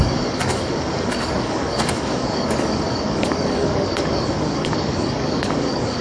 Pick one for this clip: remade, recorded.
remade